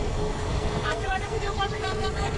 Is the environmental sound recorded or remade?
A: remade